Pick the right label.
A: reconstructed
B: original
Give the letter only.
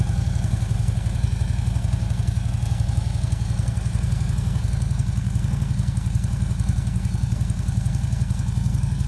A